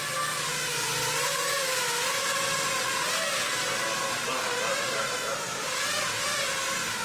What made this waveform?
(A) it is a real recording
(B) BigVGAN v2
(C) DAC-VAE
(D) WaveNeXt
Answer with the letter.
A